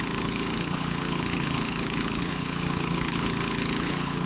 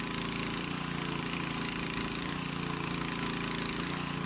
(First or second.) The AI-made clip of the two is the first